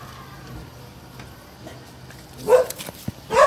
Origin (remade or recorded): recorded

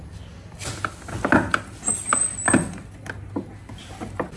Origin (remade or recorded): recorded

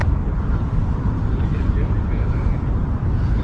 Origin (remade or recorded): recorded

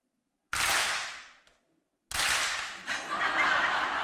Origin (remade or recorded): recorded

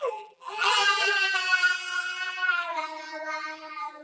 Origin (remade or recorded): remade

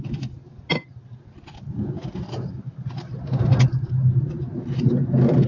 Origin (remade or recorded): recorded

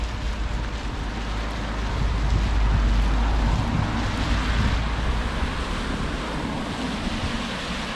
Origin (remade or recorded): recorded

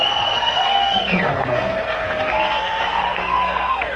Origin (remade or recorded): remade